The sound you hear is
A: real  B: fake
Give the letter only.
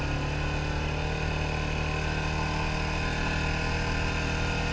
A